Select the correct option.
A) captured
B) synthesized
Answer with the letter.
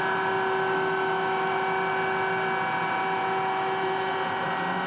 A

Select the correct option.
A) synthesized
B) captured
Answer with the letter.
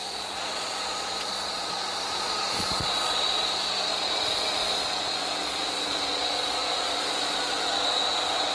A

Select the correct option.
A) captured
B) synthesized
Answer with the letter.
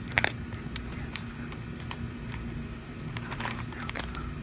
B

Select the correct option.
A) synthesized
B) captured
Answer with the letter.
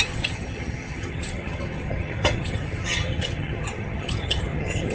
A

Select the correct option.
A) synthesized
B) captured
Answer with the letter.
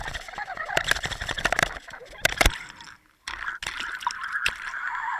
B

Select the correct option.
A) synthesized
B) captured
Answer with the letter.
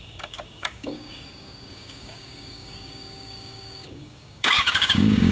A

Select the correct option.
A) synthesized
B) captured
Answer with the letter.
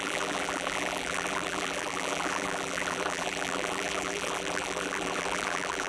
A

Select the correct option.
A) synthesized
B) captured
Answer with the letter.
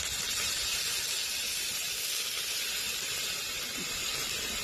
B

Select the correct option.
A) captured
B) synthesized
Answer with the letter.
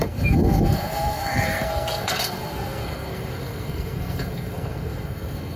B